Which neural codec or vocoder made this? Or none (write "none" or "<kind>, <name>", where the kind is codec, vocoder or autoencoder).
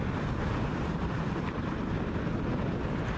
none